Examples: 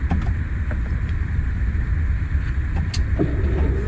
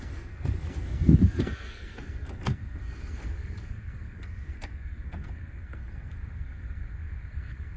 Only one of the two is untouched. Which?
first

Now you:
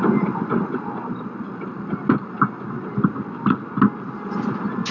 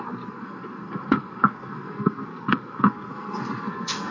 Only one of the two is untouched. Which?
first